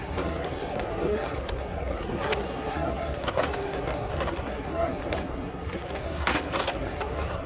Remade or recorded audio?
remade